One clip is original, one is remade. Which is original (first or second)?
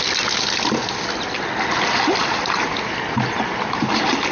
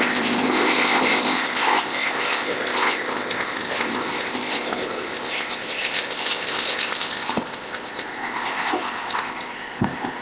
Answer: first